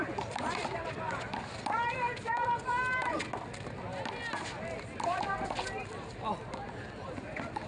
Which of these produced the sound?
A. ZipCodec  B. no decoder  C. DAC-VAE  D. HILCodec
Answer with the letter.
B